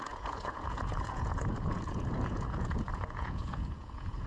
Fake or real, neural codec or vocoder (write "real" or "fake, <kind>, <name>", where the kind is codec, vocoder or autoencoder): fake, vocoder, Vocos